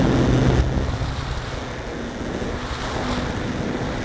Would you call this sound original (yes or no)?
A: yes